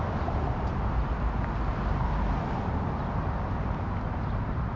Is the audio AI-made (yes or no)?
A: no